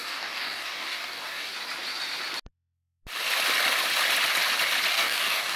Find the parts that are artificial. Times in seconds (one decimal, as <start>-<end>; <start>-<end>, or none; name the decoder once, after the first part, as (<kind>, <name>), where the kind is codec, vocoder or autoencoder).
0.0-1.5 (codec, DAC); 4.9-5.6